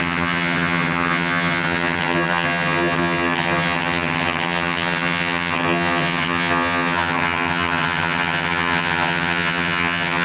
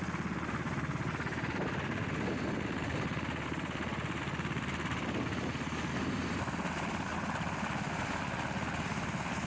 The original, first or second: second